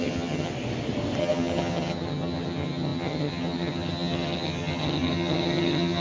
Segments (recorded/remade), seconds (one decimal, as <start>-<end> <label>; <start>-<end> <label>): 0.0-0.5 remade; 0.5-1.2 recorded; 1.2-6.0 remade